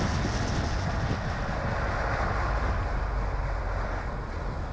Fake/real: real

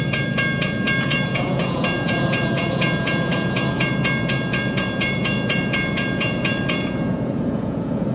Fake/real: fake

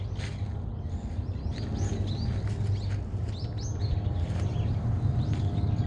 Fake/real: real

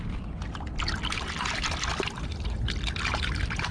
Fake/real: real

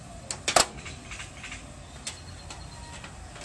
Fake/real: real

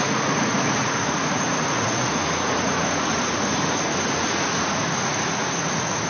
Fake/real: fake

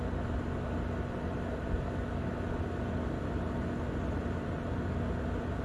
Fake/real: real